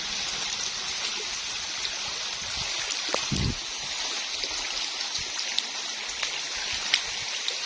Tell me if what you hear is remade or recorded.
recorded